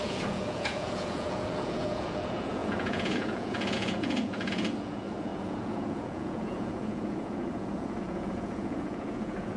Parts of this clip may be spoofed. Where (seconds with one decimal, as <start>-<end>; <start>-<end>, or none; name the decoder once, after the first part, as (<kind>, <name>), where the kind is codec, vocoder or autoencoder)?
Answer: 0.0-9.6 (vocoder, Vocos)